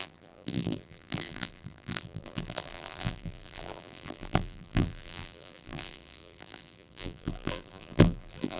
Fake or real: fake